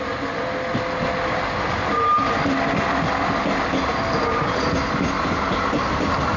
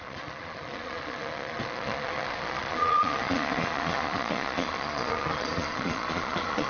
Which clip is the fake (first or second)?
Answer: second